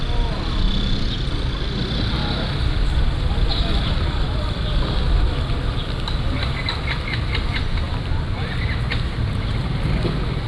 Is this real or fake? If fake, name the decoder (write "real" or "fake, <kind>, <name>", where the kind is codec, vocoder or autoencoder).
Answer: real